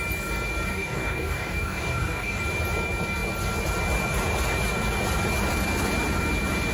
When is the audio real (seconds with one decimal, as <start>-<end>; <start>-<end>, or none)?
0.0-0.7; 2.4-6.7